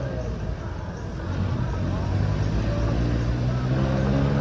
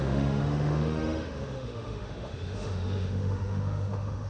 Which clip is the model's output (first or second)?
second